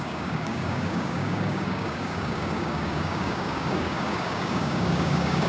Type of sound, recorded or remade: remade